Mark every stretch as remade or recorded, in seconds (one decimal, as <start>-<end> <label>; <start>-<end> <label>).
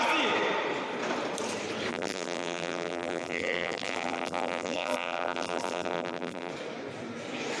0.0-1.9 recorded; 1.9-6.5 remade; 6.5-7.6 recorded